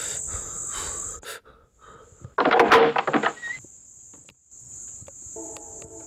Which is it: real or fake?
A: real